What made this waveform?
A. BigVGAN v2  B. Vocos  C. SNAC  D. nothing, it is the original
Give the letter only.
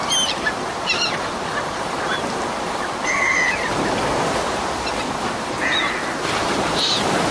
A